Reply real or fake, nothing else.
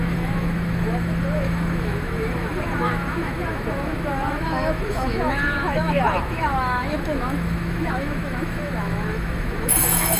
fake